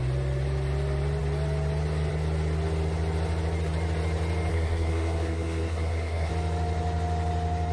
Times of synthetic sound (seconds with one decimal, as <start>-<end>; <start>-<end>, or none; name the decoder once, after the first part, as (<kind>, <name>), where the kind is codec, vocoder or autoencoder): 4.5-6.3 (codec, SNAC)